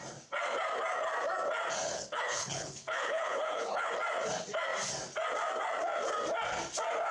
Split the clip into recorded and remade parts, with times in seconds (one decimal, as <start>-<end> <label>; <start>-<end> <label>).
0.0-1.9 recorded; 1.9-3.9 remade; 3.9-7.1 recorded